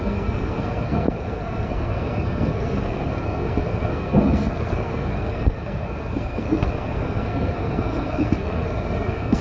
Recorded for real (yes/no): no